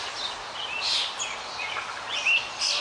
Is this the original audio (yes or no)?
yes